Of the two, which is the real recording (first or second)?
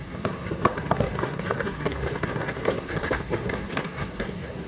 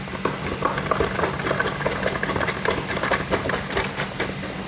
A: second